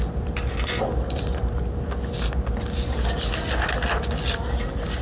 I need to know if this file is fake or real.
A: real